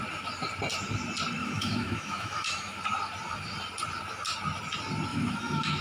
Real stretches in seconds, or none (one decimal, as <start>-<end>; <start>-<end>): 0.0-1.4; 2.8-5.1